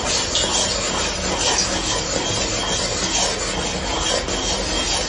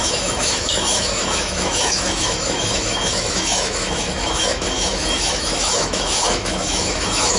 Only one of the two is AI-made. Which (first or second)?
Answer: second